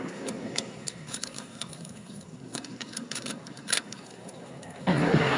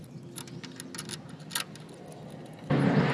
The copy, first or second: first